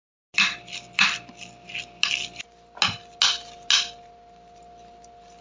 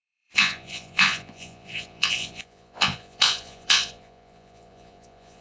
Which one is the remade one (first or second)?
second